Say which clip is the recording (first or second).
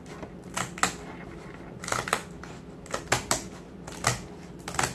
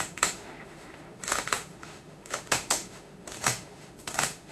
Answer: first